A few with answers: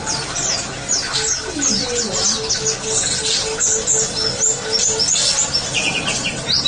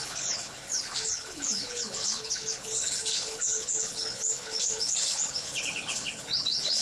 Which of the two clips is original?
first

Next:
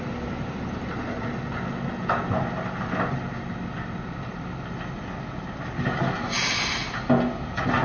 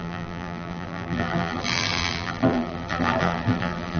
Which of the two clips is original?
first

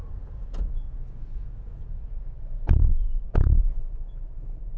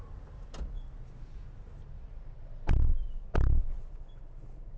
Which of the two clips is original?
second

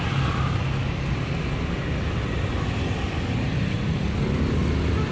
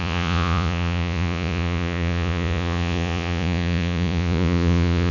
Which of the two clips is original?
first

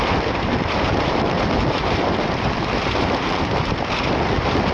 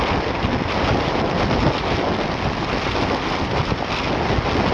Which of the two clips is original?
second